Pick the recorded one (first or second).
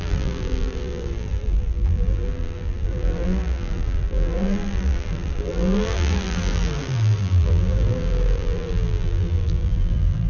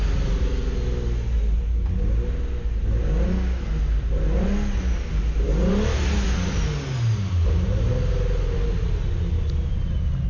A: second